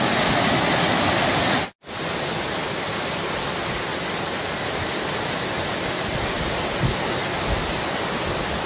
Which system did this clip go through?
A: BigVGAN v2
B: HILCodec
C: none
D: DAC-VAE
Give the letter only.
C